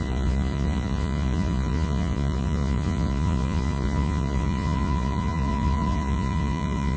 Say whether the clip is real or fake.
fake